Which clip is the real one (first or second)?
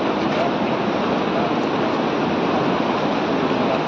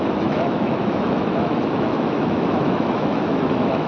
first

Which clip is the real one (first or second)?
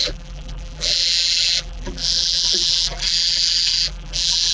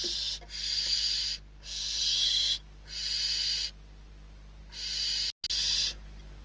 second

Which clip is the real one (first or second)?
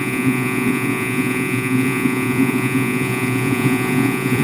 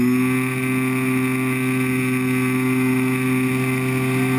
second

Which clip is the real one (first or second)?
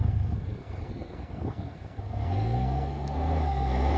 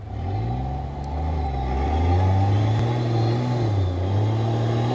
second